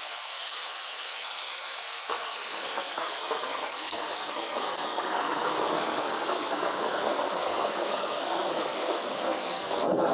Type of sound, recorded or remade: remade